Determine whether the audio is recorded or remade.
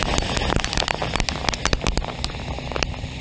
recorded